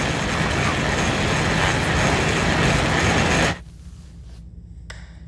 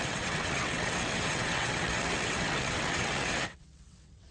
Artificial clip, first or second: second